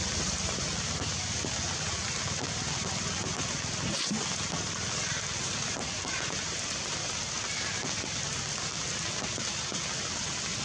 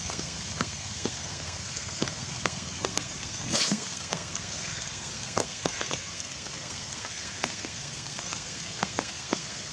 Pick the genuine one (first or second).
first